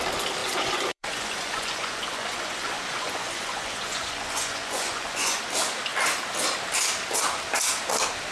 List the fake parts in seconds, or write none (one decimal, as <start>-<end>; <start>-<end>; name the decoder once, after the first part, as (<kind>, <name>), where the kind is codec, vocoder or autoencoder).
0.4-5.4 (vocoder, Vocos)

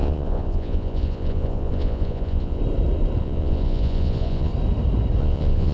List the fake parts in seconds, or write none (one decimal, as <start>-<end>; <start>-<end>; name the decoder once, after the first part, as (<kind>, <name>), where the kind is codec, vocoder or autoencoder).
0.0-2.6 (vocoder, Vocos); 3.2-4.5; 5.2-5.7

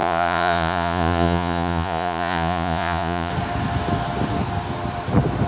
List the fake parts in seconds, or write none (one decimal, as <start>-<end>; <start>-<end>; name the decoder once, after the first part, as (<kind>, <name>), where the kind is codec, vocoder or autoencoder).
0.0-3.3 (vocoder, Vocos)

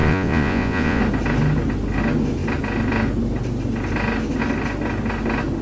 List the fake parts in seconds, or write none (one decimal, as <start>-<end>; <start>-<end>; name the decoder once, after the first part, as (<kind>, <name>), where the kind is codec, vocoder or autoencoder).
0.0-1.0 (vocoder, Vocos)

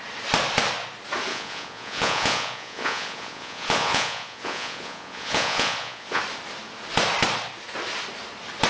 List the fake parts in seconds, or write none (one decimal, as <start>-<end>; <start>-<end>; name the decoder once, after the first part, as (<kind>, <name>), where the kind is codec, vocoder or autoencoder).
1.3-6.2 (vocoder, Vocos)

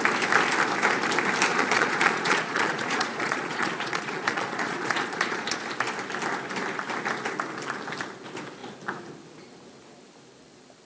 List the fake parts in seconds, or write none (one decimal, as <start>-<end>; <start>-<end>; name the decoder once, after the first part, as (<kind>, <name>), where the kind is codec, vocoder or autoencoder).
1.5-5.6 (vocoder, Vocos)

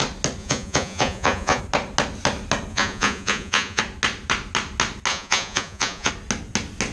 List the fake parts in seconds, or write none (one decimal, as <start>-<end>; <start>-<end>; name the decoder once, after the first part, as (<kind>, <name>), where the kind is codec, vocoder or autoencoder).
0.4-1.6 (vocoder, Vocos); 2.7-3.8; 5.1-6.1